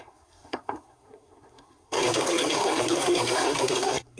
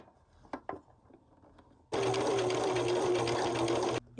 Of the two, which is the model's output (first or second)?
first